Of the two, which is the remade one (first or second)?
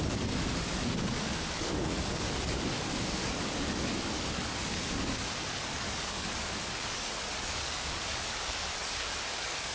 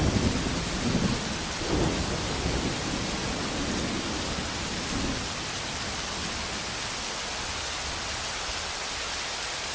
first